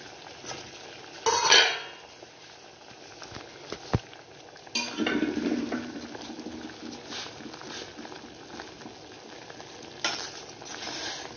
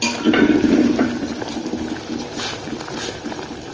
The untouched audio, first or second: first